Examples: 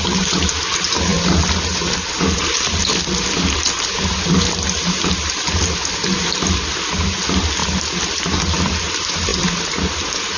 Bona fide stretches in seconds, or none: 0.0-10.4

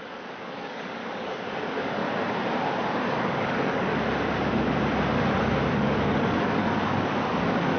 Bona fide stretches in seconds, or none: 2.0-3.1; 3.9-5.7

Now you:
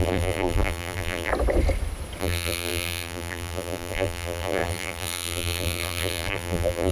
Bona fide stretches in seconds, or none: 1.3-2.2